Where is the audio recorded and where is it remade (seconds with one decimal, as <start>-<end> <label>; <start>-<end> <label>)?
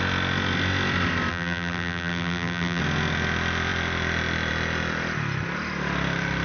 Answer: 0.0-1.3 recorded; 1.3-2.8 remade; 2.8-6.4 recorded